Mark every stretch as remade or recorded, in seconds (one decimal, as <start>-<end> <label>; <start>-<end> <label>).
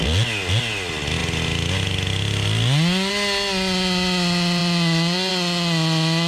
0.0-6.3 recorded